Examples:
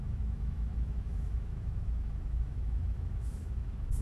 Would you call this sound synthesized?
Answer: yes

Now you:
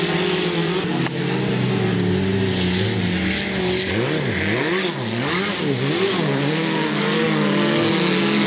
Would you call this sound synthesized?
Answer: no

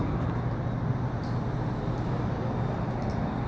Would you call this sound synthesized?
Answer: no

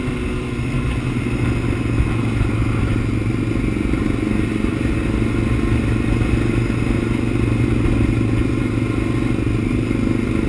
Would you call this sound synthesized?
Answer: no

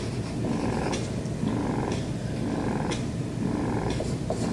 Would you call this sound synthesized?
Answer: no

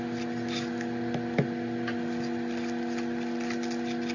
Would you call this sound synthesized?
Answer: no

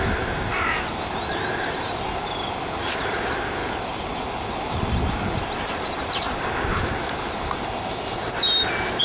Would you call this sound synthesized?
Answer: no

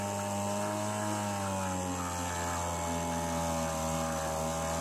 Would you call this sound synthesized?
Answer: no